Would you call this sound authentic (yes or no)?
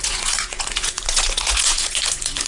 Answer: no